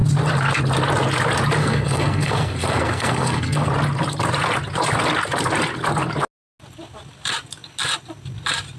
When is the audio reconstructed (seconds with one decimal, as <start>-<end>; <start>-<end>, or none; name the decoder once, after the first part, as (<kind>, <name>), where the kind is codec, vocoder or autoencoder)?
1.6-3.7 (codec, SNAC)